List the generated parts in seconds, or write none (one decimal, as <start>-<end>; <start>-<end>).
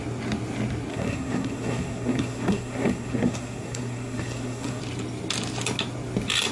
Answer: 0.9-4.8